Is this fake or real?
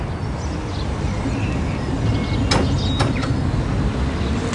real